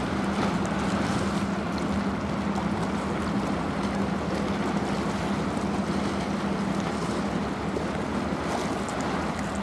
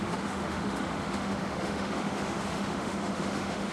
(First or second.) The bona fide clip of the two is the first